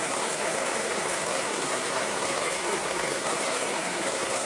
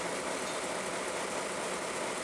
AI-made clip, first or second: first